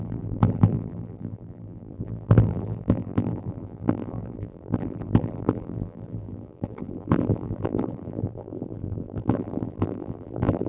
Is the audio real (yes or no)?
no